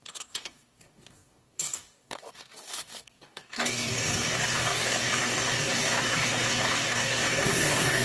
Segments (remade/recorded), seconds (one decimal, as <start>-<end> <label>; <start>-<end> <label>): 0.0-8.0 remade